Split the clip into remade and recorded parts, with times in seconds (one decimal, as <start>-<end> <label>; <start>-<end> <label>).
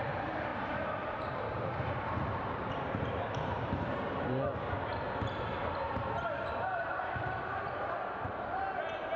0.0-0.5 recorded; 0.5-4.1 remade; 4.1-5.6 recorded; 5.6-8.5 remade; 8.5-9.2 recorded